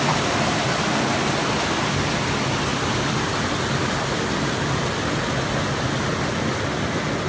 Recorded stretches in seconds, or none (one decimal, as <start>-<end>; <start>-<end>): 0.0-7.3